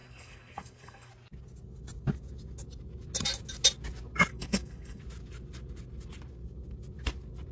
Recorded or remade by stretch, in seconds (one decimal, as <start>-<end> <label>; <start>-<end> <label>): 0.0-1.1 remade; 1.1-4.3 recorded; 4.3-5.0 remade; 5.0-7.5 recorded